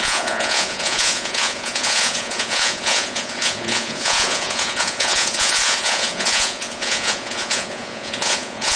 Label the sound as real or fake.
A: fake